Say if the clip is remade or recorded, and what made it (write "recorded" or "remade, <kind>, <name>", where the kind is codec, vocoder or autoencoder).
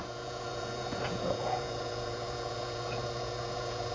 remade, vocoder, Vocos